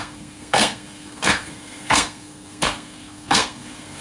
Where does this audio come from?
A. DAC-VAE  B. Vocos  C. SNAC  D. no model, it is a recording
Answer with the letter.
C